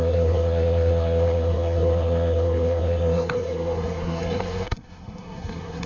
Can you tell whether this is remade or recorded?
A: remade